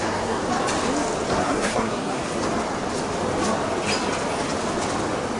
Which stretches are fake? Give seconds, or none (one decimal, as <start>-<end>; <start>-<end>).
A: 0.0-0.4; 1.4-2.2